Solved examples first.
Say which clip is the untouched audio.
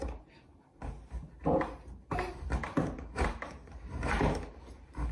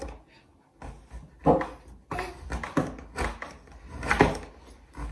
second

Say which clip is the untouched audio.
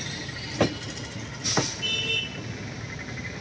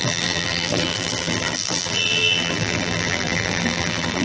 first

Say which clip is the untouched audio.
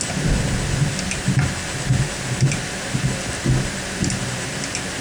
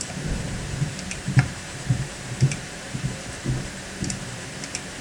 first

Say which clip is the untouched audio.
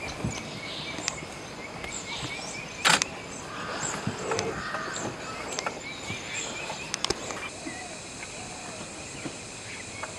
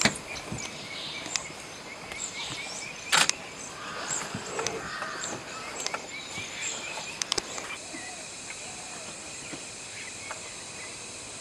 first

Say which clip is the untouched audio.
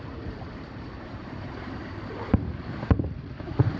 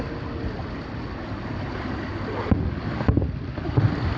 second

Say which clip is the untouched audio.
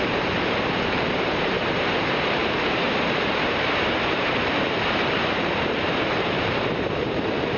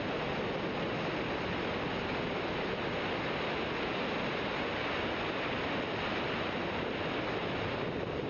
second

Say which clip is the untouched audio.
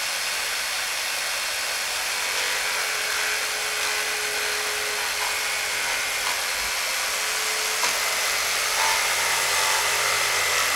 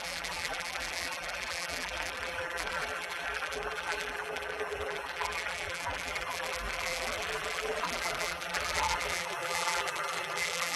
first